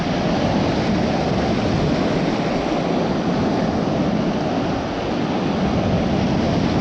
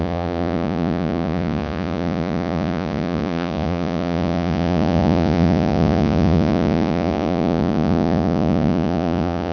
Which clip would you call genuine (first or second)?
first